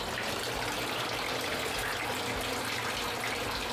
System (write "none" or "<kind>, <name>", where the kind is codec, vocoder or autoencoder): none